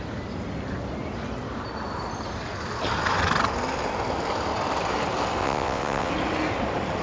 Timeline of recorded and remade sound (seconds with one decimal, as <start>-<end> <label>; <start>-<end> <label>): 0.0-5.4 recorded; 5.4-6.1 remade; 6.1-7.0 recorded